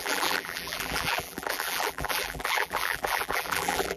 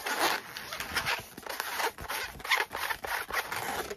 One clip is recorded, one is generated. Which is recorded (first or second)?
second